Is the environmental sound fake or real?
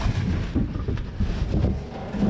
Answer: real